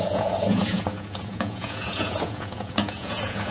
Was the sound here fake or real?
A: fake